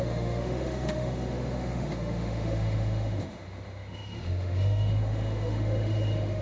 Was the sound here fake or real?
fake